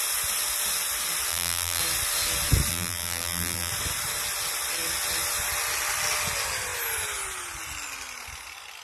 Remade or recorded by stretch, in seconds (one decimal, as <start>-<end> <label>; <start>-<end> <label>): 0.0-1.3 recorded; 1.3-1.8 remade; 1.8-2.7 recorded; 2.7-3.7 remade; 3.7-8.8 recorded